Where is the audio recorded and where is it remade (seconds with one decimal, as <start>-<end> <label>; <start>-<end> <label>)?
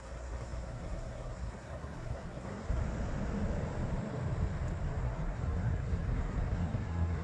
0.0-2.8 remade; 2.8-5.0 recorded; 5.0-7.2 remade